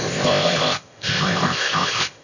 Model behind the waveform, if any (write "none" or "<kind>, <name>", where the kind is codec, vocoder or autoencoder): codec, ZipCodec